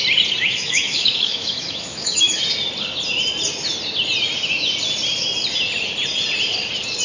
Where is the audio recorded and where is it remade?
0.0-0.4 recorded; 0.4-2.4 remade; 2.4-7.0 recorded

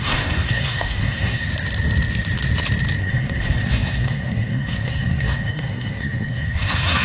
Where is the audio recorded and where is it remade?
0.0-1.5 remade; 1.5-3.0 recorded; 3.0-7.0 remade